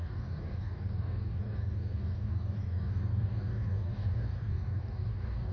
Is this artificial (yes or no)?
yes